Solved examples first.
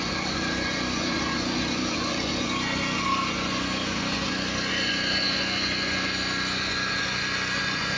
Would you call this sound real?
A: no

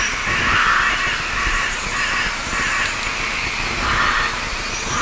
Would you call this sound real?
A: yes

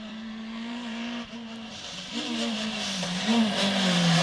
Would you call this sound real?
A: no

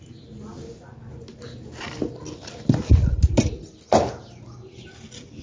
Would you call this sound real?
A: yes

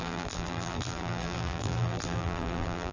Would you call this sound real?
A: no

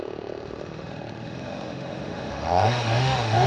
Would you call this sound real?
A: no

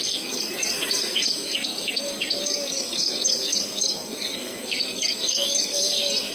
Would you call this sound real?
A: no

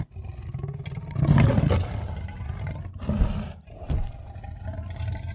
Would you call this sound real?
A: yes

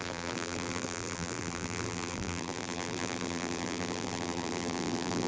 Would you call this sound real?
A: no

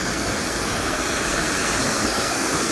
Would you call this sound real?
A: no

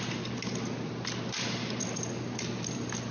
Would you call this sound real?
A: yes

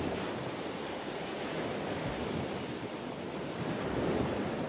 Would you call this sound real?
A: yes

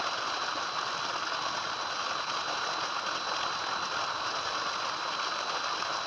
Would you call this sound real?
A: yes